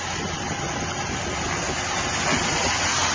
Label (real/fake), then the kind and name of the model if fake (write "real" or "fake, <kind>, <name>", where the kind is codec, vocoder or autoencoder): real